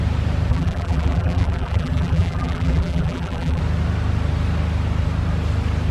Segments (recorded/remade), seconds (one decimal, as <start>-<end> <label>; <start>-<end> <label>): 0.0-0.5 recorded; 0.5-3.6 remade; 3.6-5.9 recorded